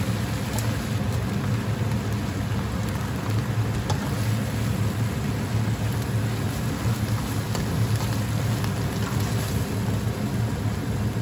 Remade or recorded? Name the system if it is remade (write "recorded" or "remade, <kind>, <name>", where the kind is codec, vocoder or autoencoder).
recorded